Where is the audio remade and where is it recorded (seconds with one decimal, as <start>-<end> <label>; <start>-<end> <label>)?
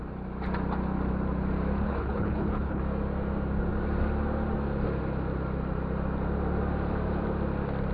0.0-1.8 recorded; 1.8-2.8 remade; 2.8-7.9 recorded